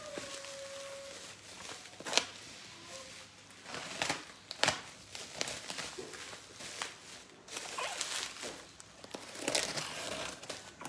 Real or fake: real